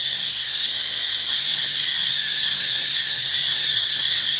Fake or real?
fake